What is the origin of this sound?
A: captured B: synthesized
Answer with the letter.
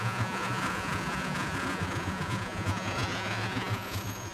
B